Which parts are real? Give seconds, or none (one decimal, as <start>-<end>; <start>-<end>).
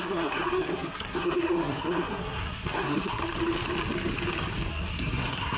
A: 3.2-4.7